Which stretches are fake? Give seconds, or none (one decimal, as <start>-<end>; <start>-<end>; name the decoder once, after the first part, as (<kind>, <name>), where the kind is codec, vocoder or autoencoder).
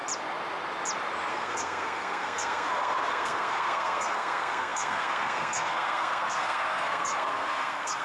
1.3-8.0 (codec, SNAC)